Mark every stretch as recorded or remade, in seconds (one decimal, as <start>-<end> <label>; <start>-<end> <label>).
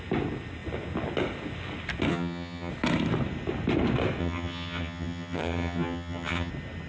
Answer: 0.0-2.1 recorded; 2.1-2.7 remade; 2.7-4.2 recorded; 4.2-6.5 remade; 6.5-6.9 recorded